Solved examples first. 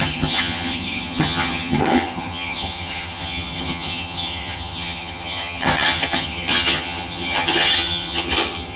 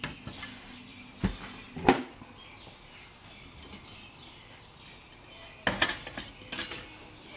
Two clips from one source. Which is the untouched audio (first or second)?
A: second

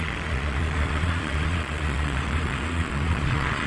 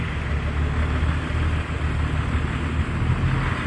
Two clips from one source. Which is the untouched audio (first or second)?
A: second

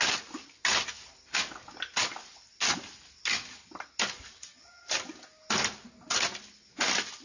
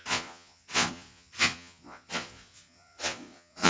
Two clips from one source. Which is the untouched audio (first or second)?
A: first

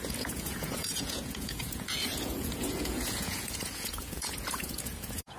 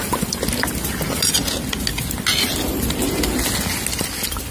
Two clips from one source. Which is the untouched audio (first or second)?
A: second